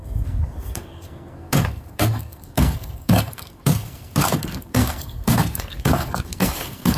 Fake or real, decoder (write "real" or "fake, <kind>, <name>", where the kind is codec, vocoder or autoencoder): fake, codec, SNAC